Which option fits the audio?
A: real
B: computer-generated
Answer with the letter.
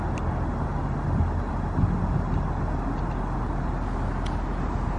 A